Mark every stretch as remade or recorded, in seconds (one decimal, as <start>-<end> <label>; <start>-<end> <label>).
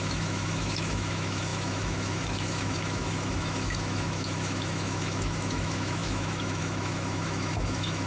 0.0-8.1 remade